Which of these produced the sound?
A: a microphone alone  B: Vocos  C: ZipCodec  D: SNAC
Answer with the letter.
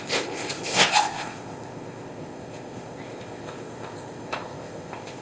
C